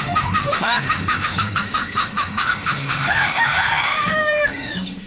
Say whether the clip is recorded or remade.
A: remade